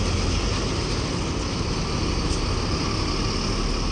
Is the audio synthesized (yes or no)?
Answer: no